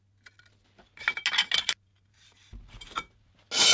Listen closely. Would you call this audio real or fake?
real